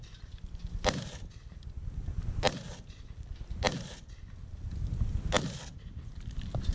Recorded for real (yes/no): yes